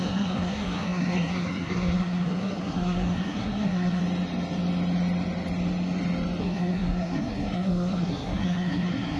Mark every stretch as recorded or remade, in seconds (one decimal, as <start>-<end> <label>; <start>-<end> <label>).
0.0-4.0 remade; 4.0-6.4 recorded; 6.4-9.2 remade